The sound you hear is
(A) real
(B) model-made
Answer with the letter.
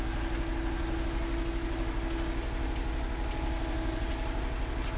A